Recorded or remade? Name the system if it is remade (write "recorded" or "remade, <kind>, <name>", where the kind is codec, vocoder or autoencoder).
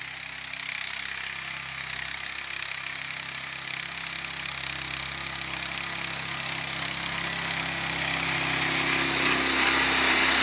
recorded